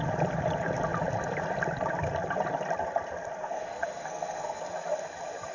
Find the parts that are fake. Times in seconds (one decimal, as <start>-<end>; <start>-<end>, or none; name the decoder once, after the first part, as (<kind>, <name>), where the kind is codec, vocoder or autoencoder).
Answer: 3.4-4.6 (codec, SNAC)